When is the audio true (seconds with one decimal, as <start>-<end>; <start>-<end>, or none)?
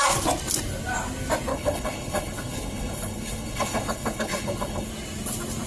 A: 0.0-1.5; 4.9-5.7